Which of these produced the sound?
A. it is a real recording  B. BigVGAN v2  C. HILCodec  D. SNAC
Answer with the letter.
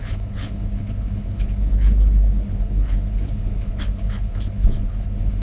C